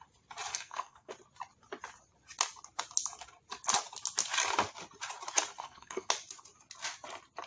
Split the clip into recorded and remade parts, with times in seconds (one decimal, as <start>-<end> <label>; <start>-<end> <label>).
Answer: 0.0-0.5 recorded; 0.5-1.1 remade; 1.1-5.6 recorded; 5.6-6.1 remade; 6.1-7.5 recorded